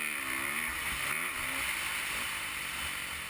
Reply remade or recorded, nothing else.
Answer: recorded